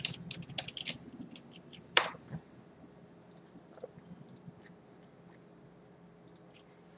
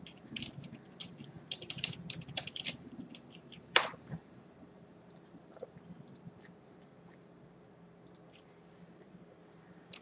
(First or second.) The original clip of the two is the first